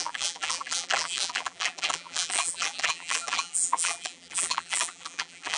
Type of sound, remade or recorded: remade